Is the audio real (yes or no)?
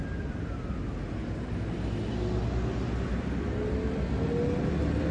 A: yes